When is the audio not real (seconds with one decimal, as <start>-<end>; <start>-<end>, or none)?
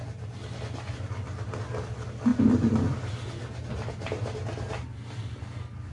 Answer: none